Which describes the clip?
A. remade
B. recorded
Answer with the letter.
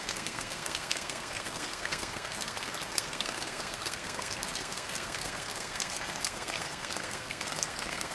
A